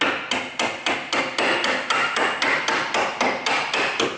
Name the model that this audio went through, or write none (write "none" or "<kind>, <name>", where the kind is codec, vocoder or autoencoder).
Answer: none